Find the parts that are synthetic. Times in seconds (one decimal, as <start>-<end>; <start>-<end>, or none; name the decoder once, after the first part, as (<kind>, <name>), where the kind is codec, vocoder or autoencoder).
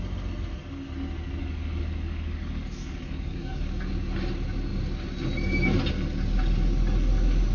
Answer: 1.4-3.8 (codec, DAC)